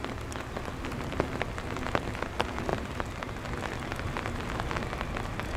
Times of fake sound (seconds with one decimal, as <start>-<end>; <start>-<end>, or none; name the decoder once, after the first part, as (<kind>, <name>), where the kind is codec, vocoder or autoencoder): none